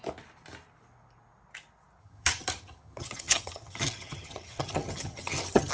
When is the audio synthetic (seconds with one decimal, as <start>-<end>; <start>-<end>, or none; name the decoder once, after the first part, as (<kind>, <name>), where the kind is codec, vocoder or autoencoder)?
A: 2.0-5.7 (vocoder, HiFi-GAN)